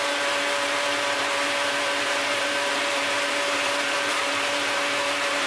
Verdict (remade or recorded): remade